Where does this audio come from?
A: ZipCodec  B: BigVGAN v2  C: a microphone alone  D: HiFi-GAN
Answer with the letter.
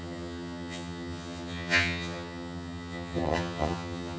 D